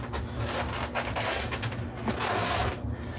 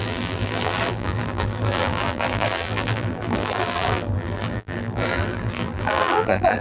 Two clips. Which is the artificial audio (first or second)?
second